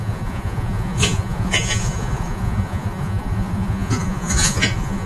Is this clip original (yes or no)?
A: no